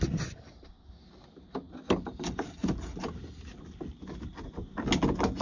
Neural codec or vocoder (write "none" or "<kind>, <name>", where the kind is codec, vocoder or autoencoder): none